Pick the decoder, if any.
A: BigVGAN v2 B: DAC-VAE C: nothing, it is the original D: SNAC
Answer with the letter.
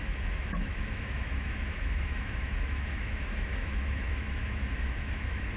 B